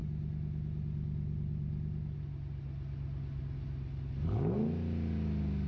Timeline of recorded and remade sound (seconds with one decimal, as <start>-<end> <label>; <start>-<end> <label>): 0.0-5.7 recorded